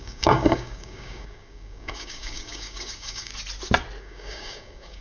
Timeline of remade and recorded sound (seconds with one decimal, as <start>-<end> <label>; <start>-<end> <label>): 0.0-3.3 remade; 3.3-4.0 recorded; 4.0-5.0 remade